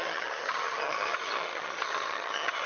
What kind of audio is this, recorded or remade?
remade